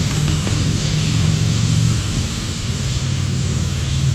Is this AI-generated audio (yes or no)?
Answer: yes